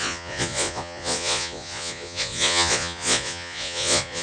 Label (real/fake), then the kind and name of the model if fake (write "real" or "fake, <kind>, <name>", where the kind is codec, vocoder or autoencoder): fake, vocoder, Vocos